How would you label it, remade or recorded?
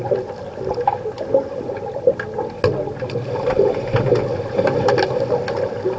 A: recorded